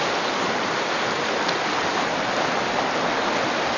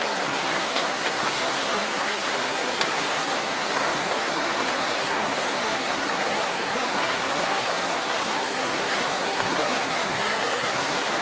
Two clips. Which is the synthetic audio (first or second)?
second